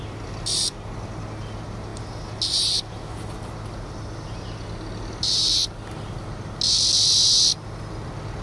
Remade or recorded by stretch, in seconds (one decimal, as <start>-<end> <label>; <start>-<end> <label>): 0.0-8.4 recorded

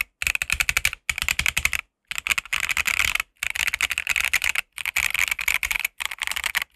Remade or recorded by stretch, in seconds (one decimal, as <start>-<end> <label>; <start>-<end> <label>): 0.0-2.5 recorded; 2.5-6.8 remade

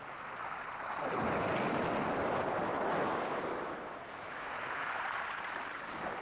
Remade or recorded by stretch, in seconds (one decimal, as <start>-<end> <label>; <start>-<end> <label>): 0.0-2.7 recorded; 2.7-5.0 remade; 5.0-6.2 recorded

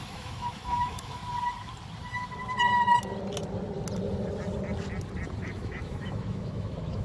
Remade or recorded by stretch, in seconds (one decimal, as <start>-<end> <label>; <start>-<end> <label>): 0.0-1.2 remade; 1.2-5.4 recorded; 5.4-7.0 remade

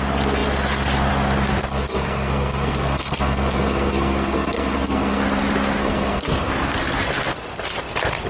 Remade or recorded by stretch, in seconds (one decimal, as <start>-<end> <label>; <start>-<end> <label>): 0.0-1.7 recorded; 1.7-5.2 remade; 5.2-5.8 recorded; 5.8-6.5 remade; 6.5-8.3 recorded

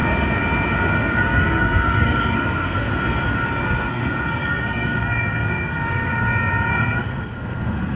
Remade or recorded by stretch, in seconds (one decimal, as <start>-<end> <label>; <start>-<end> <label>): 0.0-0.9 recorded; 0.9-2.9 remade; 2.9-3.6 recorded; 3.6-6.1 remade; 6.1-6.7 recorded; 6.7-8.0 remade